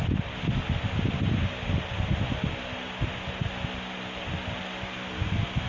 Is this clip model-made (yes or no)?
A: no